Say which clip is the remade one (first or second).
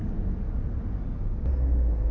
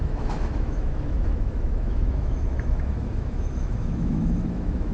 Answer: second